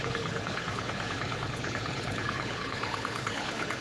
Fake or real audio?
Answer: fake